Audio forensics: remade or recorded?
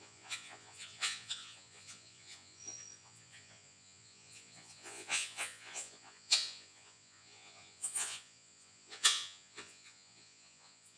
remade